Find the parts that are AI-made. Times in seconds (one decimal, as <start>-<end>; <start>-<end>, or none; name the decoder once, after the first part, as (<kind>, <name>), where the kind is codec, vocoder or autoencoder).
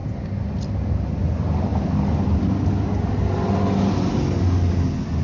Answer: none